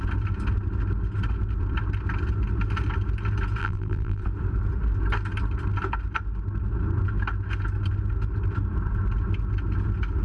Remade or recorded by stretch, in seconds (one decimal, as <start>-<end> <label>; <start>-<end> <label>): 0.0-3.6 recorded; 3.6-4.2 remade; 4.2-10.2 recorded